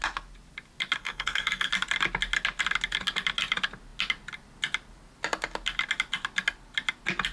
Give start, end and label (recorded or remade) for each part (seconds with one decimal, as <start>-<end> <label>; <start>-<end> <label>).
0.0-1.0 recorded; 1.0-1.7 remade; 1.7-7.3 recorded